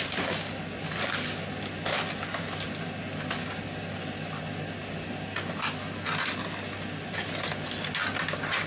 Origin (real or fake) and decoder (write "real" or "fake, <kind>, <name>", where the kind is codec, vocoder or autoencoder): real